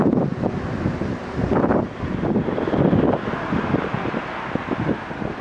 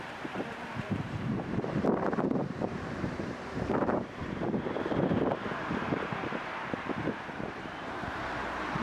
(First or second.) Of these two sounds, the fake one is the second